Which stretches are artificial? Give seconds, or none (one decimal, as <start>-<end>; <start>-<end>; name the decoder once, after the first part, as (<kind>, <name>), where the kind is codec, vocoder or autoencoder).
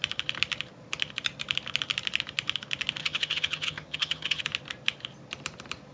3.0-4.4 (vocoder, HiFi-GAN)